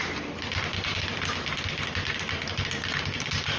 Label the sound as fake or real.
real